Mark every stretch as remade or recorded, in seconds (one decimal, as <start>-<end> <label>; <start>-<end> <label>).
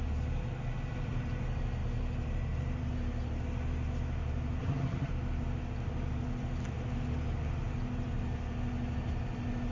0.0-4.6 recorded; 4.6-5.1 remade; 5.1-9.7 recorded